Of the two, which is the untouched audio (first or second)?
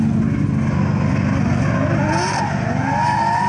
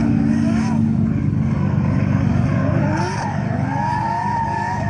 first